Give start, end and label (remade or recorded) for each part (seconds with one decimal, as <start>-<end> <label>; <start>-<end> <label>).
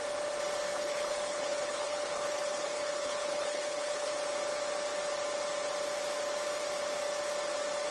0.0-0.7 recorded; 0.7-4.1 remade; 4.1-7.9 recorded